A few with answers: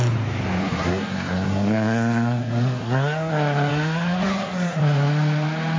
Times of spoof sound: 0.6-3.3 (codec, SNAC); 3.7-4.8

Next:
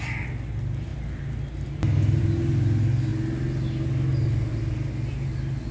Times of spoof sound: none

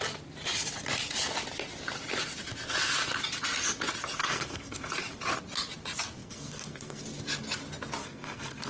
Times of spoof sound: 4.2-4.9 (codec, SNAC); 6.2-7.0; 8.0-8.7

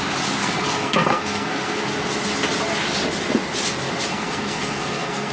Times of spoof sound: 0.4-1.8 (codec, SNAC); 4.1-5.3